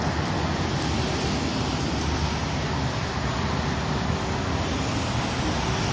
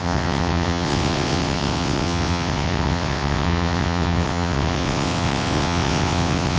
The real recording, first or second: first